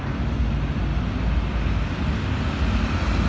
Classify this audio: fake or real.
real